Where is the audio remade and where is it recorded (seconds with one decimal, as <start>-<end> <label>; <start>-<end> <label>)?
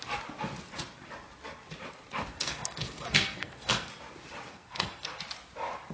0.0-2.3 recorded; 2.3-3.9 remade; 3.9-4.5 recorded; 4.5-5.2 remade; 5.2-5.9 recorded